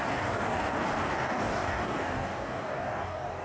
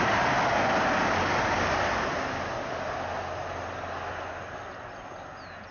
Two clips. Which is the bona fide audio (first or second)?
second